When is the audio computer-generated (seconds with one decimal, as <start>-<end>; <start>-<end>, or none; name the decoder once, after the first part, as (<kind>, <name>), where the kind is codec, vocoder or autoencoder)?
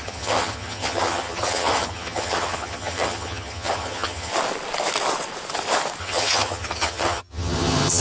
0.0-4.3 (vocoder, HiFi-GAN); 6.0-8.0